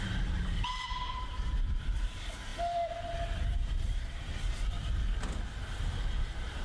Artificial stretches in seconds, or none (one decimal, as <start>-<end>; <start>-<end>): 0.0-2.5; 3.4-4.8; 5.8-6.6